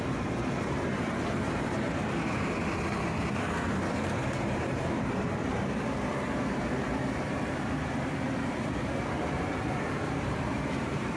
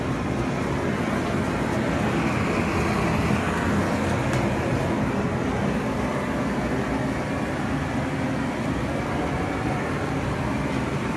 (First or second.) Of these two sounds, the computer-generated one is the first